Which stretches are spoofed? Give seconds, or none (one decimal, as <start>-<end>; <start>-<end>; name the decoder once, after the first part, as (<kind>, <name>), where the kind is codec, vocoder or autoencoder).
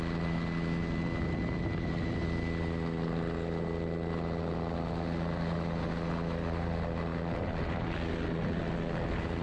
none